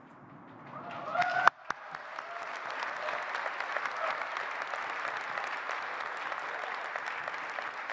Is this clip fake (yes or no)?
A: no